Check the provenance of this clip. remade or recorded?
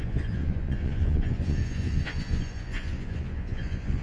remade